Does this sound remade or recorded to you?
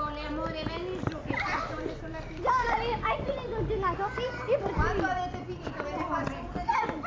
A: recorded